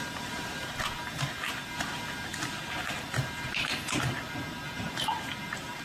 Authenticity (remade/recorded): recorded